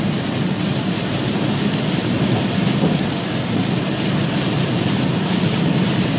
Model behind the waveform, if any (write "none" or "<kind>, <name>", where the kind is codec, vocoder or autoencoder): none